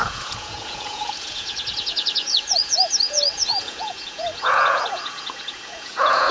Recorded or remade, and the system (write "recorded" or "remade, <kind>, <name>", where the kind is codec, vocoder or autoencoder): remade, vocoder, Vocos